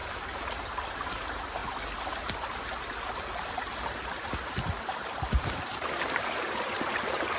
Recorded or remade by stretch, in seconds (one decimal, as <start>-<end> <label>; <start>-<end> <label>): 0.0-0.9 recorded; 0.9-1.6 remade; 1.6-4.8 recorded; 4.8-7.4 remade